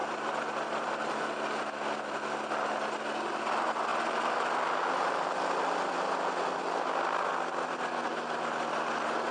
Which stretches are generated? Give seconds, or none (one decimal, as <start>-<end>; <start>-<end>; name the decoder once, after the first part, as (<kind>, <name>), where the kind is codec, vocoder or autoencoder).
none

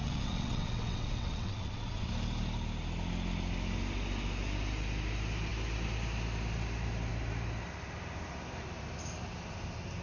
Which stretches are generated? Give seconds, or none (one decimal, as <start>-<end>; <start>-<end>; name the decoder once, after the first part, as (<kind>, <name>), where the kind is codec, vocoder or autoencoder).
0.0-2.1 (vocoder, WaveNeXt)

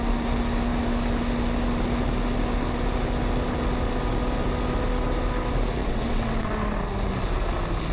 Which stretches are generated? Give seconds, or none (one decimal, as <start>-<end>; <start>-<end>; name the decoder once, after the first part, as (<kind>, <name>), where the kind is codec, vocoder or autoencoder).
5.8-6.5 (vocoder, WaveNeXt)

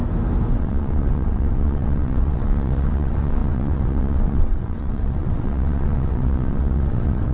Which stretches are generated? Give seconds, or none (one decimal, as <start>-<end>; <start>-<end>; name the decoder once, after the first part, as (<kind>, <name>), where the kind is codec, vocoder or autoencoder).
0.5-7.3 (vocoder, WaveNeXt)